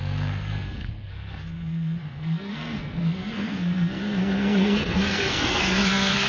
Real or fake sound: fake